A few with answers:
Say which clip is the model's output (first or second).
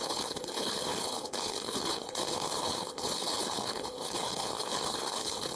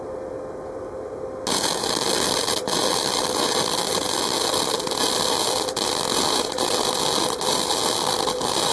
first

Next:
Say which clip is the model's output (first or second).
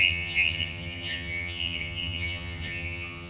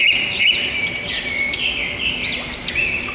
first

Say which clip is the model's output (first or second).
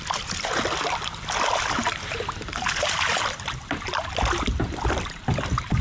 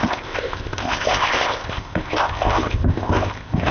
second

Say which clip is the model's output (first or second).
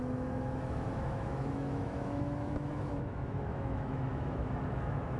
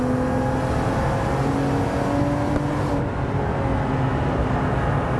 first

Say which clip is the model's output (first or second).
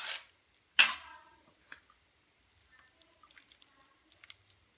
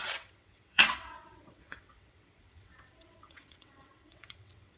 second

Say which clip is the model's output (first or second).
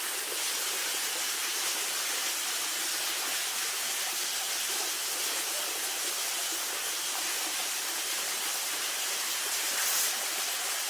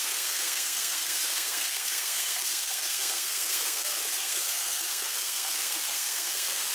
second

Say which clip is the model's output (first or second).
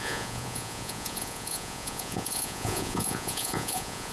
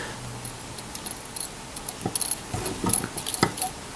first